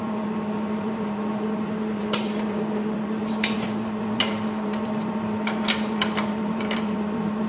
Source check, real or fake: fake